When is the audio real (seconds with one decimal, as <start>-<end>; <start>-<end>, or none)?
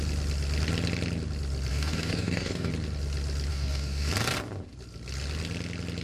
0.0-1.7; 2.7-3.5; 4.1-6.0